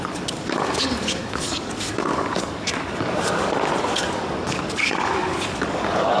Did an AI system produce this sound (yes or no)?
yes